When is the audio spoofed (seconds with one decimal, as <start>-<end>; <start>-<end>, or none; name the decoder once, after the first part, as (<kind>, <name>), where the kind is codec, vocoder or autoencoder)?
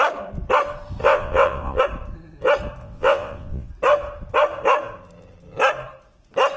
1.0-1.8 (vocoder, WaveNeXt); 2.8-3.7